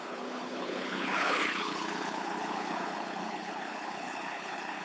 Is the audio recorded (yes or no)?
no